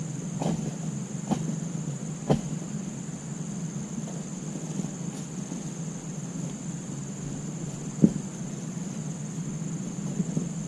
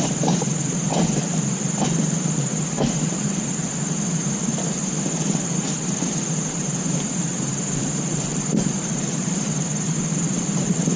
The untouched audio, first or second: first